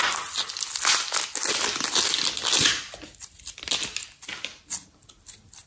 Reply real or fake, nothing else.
real